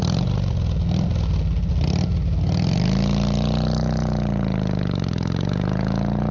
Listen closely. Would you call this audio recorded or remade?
recorded